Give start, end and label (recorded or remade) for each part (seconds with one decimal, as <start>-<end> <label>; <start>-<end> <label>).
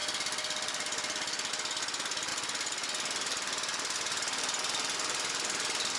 0.0-6.0 recorded